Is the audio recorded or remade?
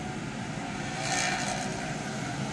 recorded